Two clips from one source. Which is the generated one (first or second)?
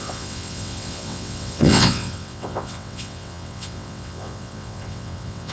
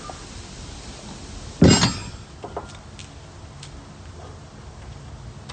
first